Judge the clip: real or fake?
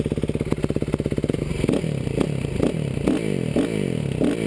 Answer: real